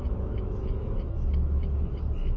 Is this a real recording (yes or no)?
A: no